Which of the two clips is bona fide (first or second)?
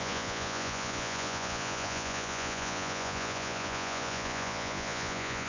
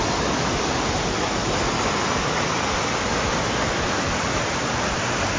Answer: second